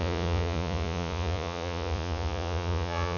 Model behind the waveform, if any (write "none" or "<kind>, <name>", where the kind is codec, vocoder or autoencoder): vocoder, Vocos